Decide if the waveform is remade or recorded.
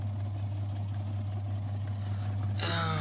recorded